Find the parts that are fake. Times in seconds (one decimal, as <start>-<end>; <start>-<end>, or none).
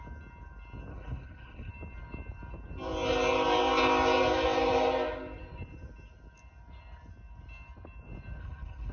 0.9-1.7; 8.4-8.9